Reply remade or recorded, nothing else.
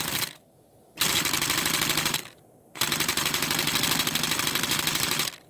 recorded